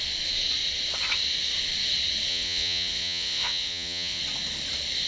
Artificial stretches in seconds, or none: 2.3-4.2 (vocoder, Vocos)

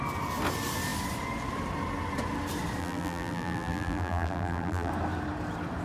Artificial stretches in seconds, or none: 2.8-4.9 (vocoder, BigVGAN v2)

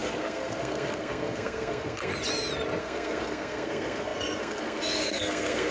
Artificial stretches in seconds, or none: 0.0-2.1 (codec, SNAC); 2.8-5.7

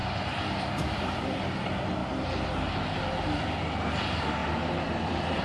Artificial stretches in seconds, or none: 0.6-2.0 (vocoder, BigVGAN v2); 3.9-5.4

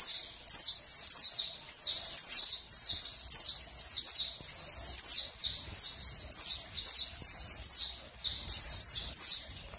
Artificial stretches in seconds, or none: 2.2-3.0 (vocoder, BigVGAN v2); 7.1-7.8; 8.3-9.8

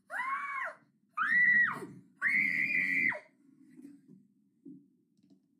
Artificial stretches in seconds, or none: 0.0-0.9 (vocoder, Vocos)

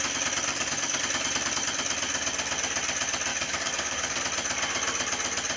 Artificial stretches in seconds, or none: 0.5-1.0 (codec, DAC); 3.3-4.2